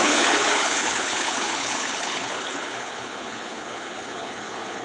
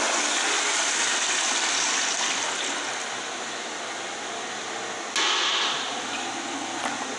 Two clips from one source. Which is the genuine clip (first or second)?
second